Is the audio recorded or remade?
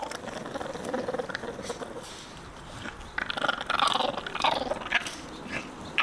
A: recorded